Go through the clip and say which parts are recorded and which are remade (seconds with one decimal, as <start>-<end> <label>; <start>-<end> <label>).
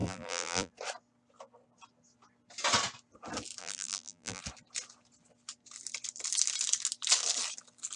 0.0-0.7 remade; 0.7-3.6 recorded; 3.6-4.4 remade; 4.4-8.0 recorded